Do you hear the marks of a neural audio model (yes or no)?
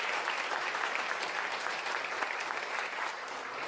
yes